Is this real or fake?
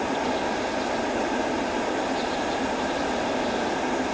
real